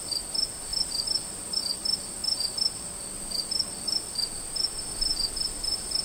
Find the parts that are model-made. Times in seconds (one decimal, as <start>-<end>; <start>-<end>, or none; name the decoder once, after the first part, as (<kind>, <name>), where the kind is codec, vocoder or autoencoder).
none